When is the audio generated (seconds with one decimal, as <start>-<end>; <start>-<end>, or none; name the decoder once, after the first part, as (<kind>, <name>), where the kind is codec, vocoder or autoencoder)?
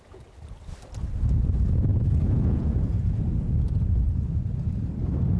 1.9-3.2 (vocoder, Vocos)